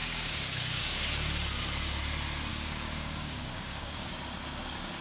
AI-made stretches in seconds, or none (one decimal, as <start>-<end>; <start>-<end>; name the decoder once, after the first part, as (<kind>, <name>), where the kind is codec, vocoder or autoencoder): 0.0-1.1 (codec, DAC); 2.5-4.1